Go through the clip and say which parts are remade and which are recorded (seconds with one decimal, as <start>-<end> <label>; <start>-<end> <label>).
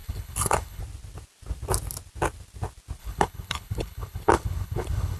0.0-0.8 remade; 0.8-3.0 recorded; 3.0-5.2 remade